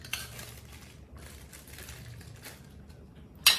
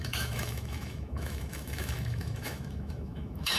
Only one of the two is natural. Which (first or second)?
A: first